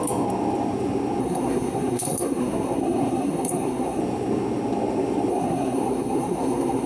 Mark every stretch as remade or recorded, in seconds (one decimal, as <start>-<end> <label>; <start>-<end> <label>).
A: 0.0-1.2 recorded; 1.2-4.0 remade; 4.0-5.3 recorded; 5.3-6.9 remade